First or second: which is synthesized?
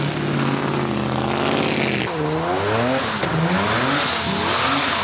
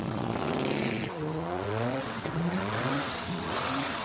second